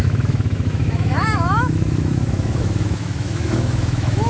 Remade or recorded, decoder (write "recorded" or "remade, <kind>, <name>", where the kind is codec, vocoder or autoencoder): remade, autoencoder, DAC-VAE